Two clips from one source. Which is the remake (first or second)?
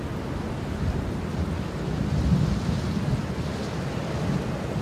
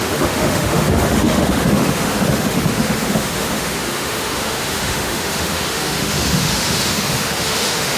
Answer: second